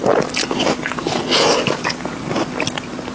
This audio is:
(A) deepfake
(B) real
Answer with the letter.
B